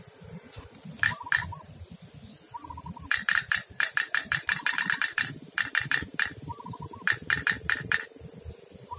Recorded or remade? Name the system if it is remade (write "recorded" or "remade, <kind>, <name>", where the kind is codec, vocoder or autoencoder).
remade, vocoder, BigVGAN v2